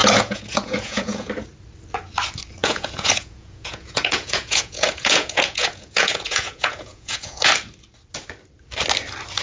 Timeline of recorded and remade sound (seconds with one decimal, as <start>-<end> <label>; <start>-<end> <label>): 0.0-1.3 remade; 1.3-2.6 recorded; 2.6-7.5 remade; 7.5-9.4 recorded